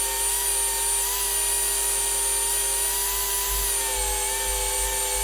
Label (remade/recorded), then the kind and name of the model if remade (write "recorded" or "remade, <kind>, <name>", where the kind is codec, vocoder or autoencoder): recorded